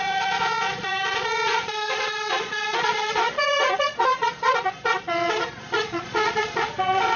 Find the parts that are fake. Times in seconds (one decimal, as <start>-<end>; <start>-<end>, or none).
0.0-7.2